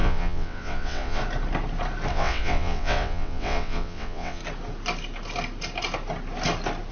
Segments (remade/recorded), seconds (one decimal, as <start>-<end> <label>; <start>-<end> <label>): 0.0-1.2 remade; 1.2-2.1 recorded; 2.1-4.4 remade; 4.4-6.9 recorded